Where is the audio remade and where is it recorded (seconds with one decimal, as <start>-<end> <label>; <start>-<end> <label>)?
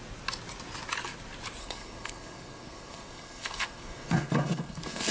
0.0-1.6 recorded; 1.6-5.1 remade